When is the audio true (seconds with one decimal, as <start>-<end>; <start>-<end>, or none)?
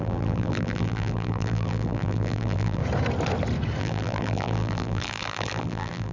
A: 2.8-3.8